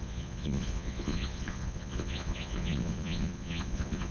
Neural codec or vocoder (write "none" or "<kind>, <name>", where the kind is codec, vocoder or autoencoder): vocoder, Vocos